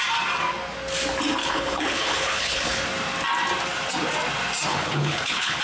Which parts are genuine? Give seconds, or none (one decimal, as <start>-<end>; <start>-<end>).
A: 0.0-1.4; 2.8-4.7